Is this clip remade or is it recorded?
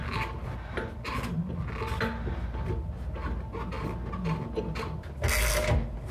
recorded